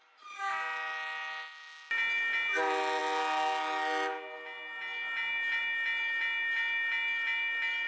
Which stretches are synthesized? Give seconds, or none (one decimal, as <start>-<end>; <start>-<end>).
none